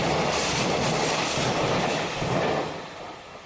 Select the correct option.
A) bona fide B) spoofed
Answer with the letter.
A